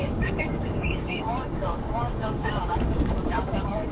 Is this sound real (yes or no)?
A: no